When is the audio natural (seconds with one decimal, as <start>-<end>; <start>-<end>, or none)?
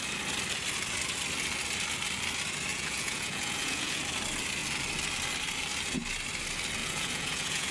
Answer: 0.0-2.7; 4.0-6.8